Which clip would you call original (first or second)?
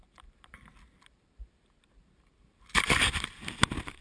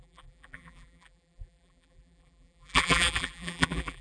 first